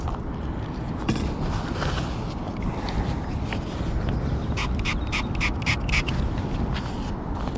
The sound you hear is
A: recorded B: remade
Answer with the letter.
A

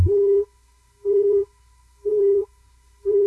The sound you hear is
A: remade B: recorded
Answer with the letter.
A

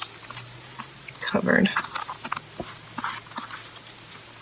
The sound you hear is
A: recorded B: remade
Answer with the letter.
A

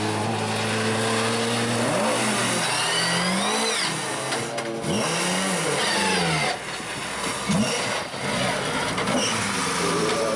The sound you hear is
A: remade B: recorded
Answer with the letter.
B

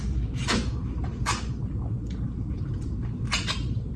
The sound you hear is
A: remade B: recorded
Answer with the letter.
A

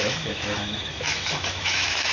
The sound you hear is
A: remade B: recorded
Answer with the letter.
A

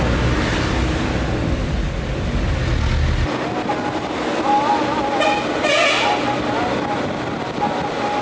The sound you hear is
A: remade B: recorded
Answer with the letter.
B